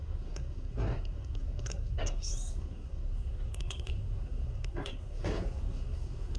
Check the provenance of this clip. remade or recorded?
remade